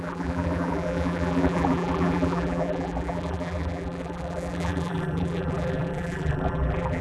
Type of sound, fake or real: fake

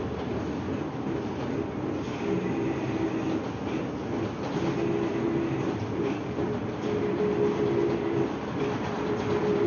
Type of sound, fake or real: real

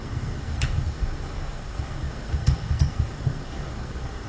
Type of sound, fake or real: fake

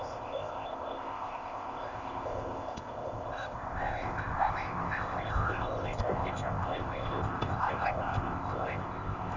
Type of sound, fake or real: fake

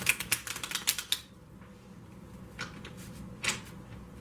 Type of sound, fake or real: real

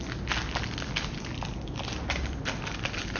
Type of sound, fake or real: real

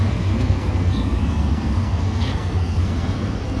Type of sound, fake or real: fake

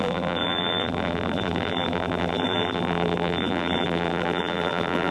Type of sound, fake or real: fake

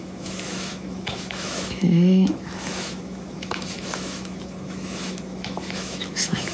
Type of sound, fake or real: fake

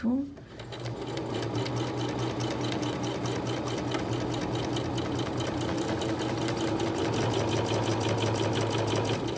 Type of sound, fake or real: real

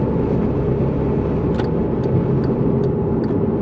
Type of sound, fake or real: real